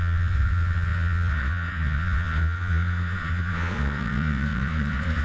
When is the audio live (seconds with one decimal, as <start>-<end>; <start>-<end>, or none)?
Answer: none